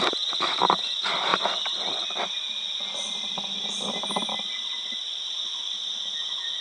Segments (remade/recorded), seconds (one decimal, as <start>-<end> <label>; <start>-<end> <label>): 0.0-6.6 recorded